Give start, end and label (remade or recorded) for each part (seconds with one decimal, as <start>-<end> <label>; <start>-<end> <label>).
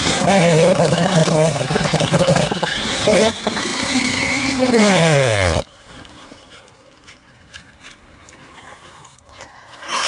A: 0.0-10.1 remade